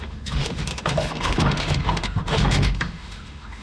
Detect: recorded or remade remade